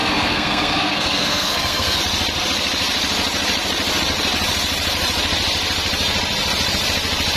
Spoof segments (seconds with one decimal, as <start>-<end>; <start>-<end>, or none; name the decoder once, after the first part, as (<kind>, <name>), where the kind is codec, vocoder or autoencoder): 0.0-2.0 (codec, SNAC)